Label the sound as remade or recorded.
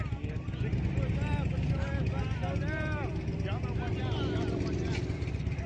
recorded